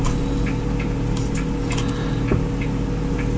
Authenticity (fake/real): real